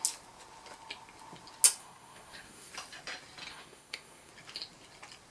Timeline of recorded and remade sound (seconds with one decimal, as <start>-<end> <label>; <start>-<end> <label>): 0.0-1.8 recorded; 1.8-2.7 remade; 2.7-3.5 recorded; 3.5-4.3 remade; 4.3-5.3 recorded